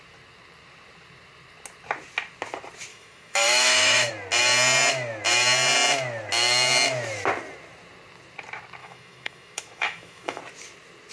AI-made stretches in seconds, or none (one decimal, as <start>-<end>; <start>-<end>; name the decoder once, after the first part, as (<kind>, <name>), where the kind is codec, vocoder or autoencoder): 2.9-4.1 (autoencoder, DAC-VAE); 8.8-10.4